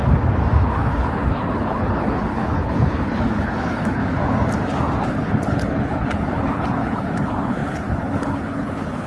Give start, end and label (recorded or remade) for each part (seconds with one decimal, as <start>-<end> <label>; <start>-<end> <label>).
0.0-0.6 recorded; 0.6-4.0 remade; 4.0-5.0 recorded; 5.0-9.1 remade